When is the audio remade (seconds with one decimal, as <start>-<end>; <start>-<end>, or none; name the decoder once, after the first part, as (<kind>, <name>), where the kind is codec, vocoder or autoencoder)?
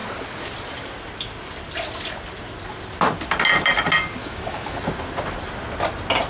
4.2-4.8 (autoencoder, DAC-VAE)